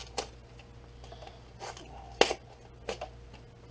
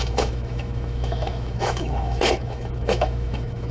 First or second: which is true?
first